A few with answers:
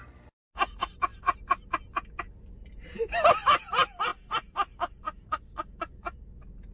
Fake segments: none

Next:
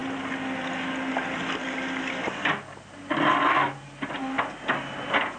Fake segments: none

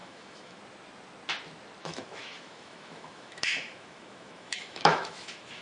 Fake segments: 0.0-0.6; 1.8-5.6

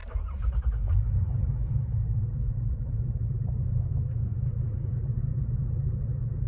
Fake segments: 0.0-3.9; 4.3-4.9

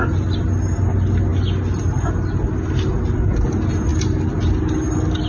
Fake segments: none

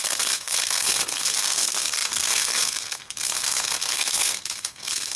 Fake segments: 0.0-5.2

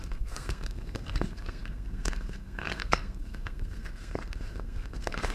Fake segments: 0.0-5.3